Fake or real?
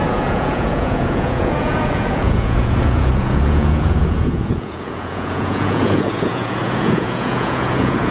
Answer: fake